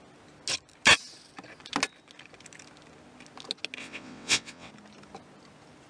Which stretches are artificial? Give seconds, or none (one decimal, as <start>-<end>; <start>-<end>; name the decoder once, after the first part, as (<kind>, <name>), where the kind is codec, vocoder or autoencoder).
3.8-4.7 (vocoder, WaveNeXt)